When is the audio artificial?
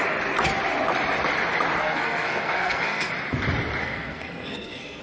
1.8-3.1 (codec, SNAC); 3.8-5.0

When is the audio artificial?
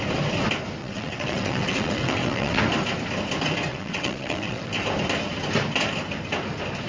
0.8-2.6 (vocoder, WaveNeXt); 3.7-4.7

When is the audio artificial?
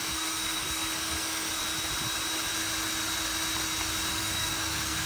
0.0-1.6 (codec, SNAC); 4.1-5.1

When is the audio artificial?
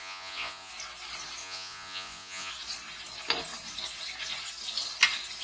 0.0-0.7 (vocoder, Vocos); 1.4-2.5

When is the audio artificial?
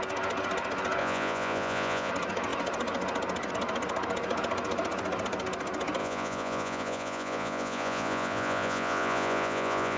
1.0-2.1 (vocoder, Vocos); 6.0-10.0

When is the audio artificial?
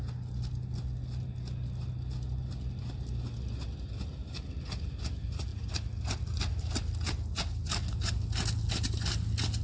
none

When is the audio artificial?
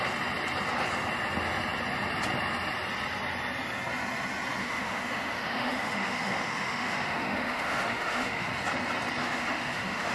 4.6-8.5 (autoencoder, DAC-VAE); 9.2-10.1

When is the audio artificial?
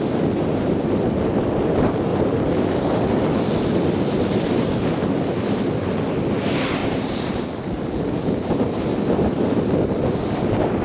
2.1-3.0 (vocoder, BigVGAN v2); 6.8-7.4